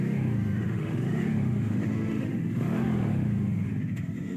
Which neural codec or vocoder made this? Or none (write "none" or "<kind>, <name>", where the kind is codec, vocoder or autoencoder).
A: autoencoder, DAC-VAE